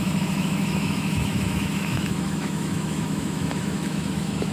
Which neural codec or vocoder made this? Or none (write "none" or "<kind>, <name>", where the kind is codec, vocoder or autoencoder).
autoencoder, DAC-VAE